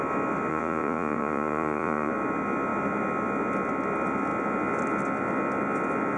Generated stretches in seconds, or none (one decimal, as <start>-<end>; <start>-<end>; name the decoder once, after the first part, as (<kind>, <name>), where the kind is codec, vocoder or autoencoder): 0.5-2.1 (vocoder, Vocos)